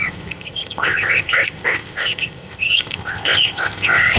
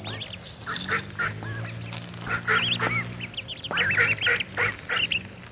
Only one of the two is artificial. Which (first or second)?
first